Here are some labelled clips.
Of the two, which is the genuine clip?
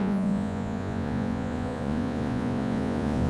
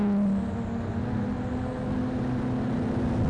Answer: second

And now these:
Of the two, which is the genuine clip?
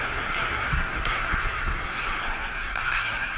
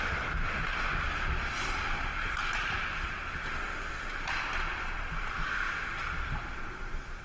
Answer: second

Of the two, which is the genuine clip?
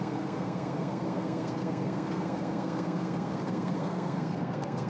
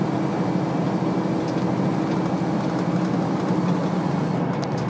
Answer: second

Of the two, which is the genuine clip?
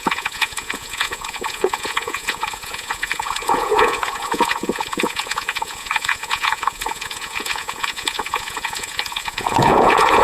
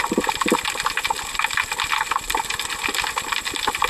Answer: second